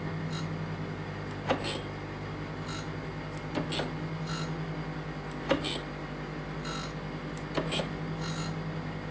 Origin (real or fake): real